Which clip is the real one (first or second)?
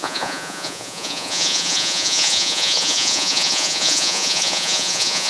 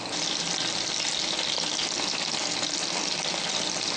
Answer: second